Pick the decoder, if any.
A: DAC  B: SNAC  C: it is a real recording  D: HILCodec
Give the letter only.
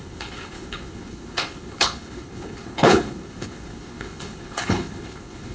D